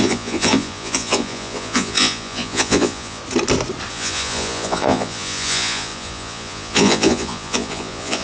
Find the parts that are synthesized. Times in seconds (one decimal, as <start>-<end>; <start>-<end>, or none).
0.0-3.2; 3.9-8.2